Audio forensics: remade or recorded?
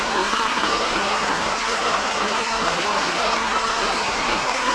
remade